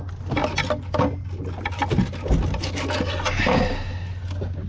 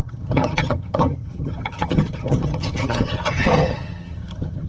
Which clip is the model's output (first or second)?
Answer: second